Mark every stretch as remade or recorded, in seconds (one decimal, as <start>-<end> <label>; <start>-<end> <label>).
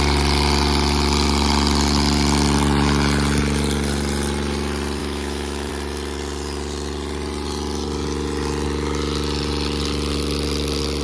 0.0-5.0 recorded; 5.0-5.7 remade; 5.7-11.0 recorded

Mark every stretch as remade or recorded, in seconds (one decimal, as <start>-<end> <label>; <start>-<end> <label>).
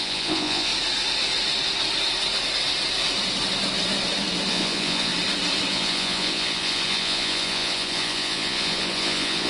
0.0-0.7 remade; 0.7-4.5 recorded; 4.5-5.1 remade; 5.1-5.7 recorded; 5.7-9.5 remade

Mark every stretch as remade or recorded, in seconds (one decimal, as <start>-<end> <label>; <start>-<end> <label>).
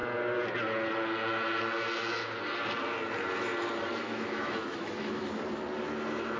0.0-3.9 recorded; 3.9-5.3 remade; 5.3-6.4 recorded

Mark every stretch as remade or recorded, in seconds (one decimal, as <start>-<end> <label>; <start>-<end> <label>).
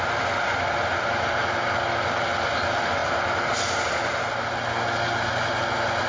0.0-6.1 recorded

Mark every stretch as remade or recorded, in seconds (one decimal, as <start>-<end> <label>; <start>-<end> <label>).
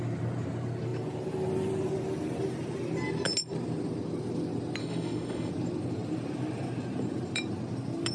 0.0-4.8 recorded; 4.8-5.5 remade; 5.5-8.1 recorded